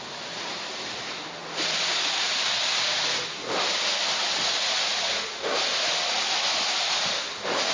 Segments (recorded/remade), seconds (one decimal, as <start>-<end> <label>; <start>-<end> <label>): 0.0-7.7 recorded